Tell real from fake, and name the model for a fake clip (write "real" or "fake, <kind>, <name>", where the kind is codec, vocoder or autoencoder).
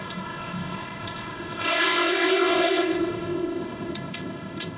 fake, codec, ZipCodec